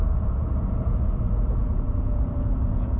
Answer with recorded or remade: remade